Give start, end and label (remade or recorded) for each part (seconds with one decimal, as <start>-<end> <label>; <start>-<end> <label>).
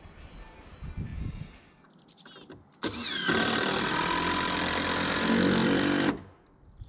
0.0-6.9 recorded